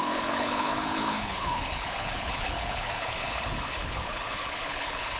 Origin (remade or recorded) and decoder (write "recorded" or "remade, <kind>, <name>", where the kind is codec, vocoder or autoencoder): remade, codec, HILCodec